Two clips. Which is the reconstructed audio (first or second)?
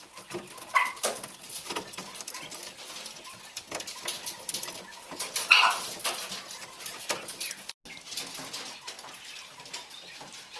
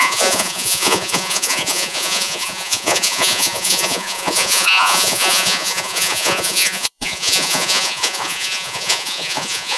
second